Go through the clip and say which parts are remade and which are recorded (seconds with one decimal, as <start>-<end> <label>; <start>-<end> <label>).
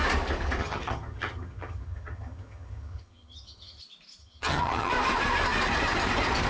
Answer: 0.0-0.6 recorded; 0.6-3.8 remade; 3.8-4.2 recorded; 4.2-4.9 remade; 4.9-6.5 recorded